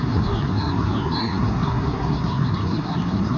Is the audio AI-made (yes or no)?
yes